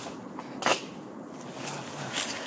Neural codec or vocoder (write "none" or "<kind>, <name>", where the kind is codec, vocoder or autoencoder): vocoder, BigVGAN v2